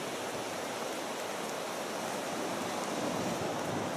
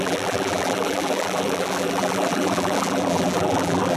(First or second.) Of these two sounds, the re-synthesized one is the second